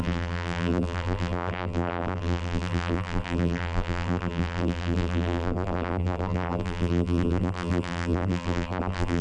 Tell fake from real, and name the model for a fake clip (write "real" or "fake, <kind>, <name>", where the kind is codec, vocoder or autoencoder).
fake, vocoder, BigVGAN v2